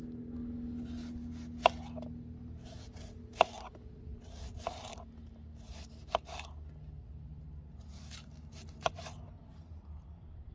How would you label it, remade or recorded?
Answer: recorded